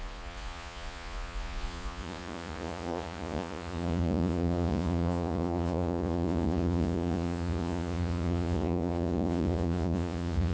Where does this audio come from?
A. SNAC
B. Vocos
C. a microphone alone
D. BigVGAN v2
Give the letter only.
B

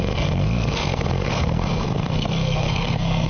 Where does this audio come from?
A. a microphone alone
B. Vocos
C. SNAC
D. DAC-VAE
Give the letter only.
C